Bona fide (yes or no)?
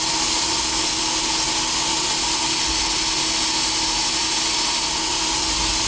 yes